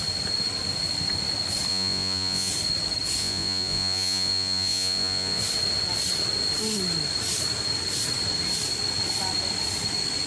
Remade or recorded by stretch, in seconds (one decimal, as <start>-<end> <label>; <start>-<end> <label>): 0.0-1.7 recorded; 1.7-2.5 remade; 2.5-3.2 recorded; 3.2-5.4 remade; 5.4-10.3 recorded